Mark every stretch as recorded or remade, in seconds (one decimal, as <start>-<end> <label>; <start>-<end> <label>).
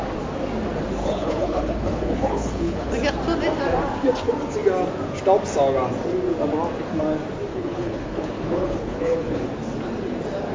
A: 0.0-1.0 recorded; 1.0-2.9 remade; 2.9-7.5 recorded; 7.5-9.5 remade; 9.5-10.5 recorded